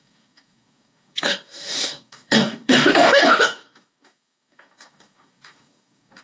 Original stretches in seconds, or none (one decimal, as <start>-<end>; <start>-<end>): none